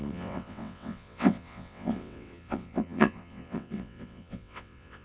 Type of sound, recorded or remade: remade